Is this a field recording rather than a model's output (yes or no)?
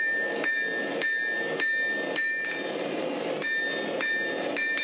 yes